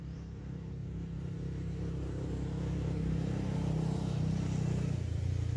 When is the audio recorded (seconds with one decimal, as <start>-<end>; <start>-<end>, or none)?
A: 0.0-0.8; 4.2-5.6